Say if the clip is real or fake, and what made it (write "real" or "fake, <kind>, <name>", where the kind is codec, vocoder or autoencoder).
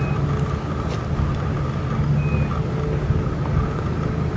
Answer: real